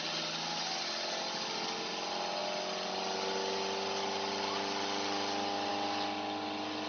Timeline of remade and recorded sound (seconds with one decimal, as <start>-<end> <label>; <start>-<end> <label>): 0.0-6.9 recorded